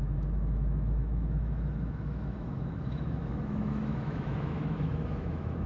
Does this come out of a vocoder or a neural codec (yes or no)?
yes